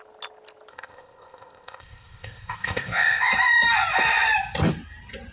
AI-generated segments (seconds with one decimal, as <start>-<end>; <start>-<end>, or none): 0.7-3.3